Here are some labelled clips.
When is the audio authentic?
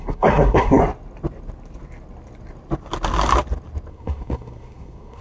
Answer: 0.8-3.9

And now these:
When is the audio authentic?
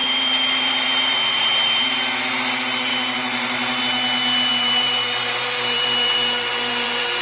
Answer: 2.3-2.9; 3.8-4.5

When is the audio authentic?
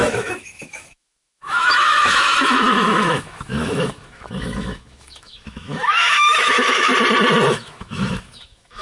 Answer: 6.9-7.5